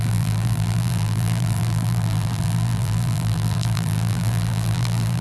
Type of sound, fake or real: fake